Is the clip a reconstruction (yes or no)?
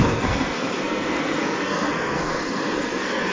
yes